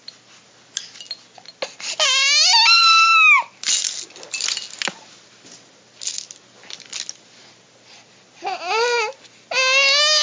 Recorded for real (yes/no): yes